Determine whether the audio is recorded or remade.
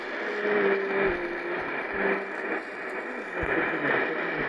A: recorded